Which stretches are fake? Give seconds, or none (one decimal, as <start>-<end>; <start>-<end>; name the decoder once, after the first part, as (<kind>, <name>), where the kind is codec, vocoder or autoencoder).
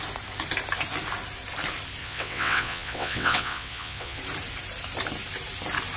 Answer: 2.0-4.2 (vocoder, WaveNeXt)